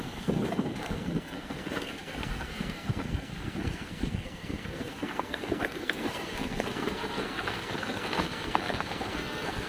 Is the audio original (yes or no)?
no